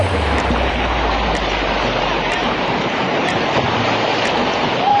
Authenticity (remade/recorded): remade